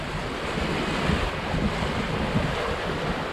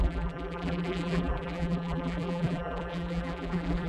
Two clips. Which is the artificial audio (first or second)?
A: second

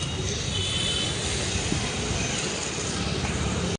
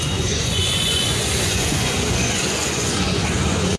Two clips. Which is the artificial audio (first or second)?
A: second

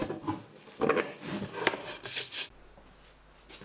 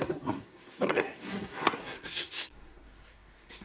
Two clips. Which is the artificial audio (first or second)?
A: second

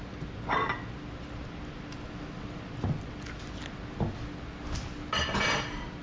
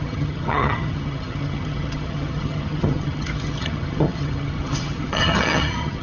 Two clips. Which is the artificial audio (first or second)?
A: second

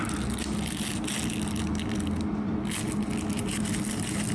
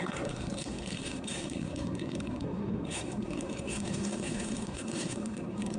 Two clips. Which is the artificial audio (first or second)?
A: second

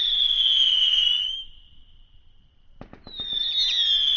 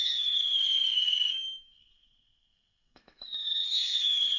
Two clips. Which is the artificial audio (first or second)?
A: second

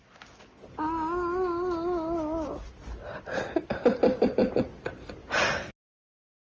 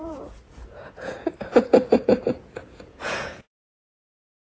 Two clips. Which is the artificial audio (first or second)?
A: second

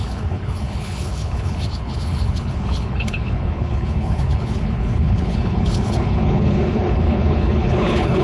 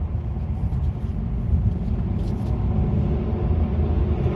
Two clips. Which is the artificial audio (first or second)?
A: first